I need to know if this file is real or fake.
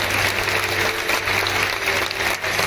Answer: real